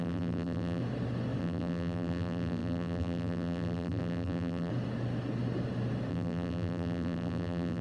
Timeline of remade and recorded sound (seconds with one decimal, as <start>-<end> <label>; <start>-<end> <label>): 0.0-0.8 remade; 0.8-1.4 recorded; 1.4-4.7 remade; 4.7-6.1 recorded; 6.1-7.8 remade